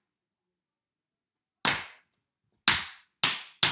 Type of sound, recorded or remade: recorded